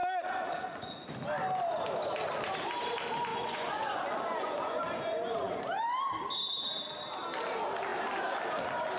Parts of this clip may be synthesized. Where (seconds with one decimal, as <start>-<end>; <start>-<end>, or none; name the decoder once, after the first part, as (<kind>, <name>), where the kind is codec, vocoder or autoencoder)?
0.0-1.1 (vocoder, Vocos); 3.3-5.6